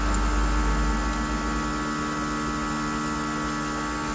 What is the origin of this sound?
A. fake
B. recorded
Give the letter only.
B